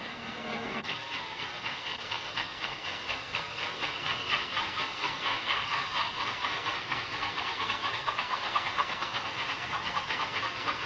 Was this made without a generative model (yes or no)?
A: no